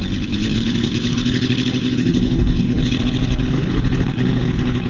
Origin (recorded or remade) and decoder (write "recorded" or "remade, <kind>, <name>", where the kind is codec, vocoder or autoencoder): remade, codec, HILCodec